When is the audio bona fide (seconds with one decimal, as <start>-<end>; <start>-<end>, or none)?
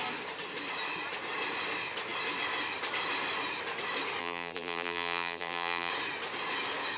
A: 0.0-4.2; 5.9-7.0